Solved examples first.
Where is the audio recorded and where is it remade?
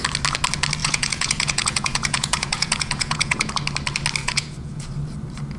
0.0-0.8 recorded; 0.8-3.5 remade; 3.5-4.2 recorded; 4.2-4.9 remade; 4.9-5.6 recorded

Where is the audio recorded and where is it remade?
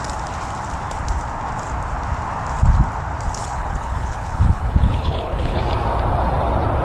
0.0-3.4 recorded; 3.4-5.6 remade; 5.6-6.8 recorded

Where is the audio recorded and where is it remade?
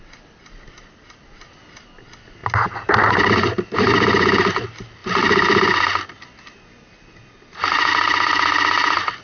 0.0-9.2 recorded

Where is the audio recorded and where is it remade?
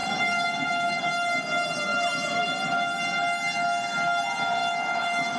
0.0-1.0 remade; 1.0-4.6 recorded; 4.6-5.4 remade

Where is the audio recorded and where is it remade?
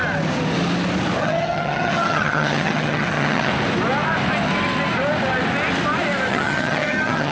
0.0-1.2 recorded; 1.2-3.5 remade; 3.5-6.3 recorded; 6.3-7.3 remade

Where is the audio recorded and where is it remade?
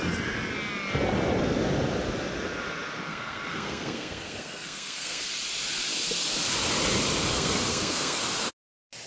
0.0-3.1 recorded; 3.1-5.2 remade; 5.2-7.3 recorded; 7.3-8.2 remade; 8.2-9.1 recorded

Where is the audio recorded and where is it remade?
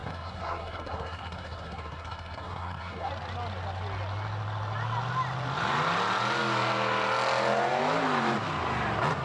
0.0-3.1 remade; 3.1-9.2 recorded